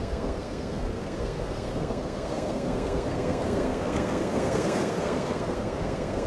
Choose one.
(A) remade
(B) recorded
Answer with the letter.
A